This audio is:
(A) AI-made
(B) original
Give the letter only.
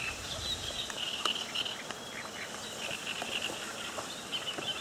B